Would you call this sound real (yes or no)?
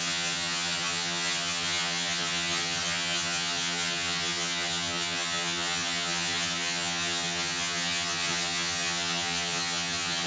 no